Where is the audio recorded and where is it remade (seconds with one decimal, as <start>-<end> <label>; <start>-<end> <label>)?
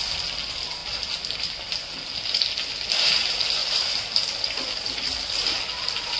0.0-6.2 recorded